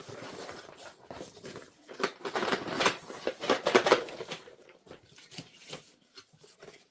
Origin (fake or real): fake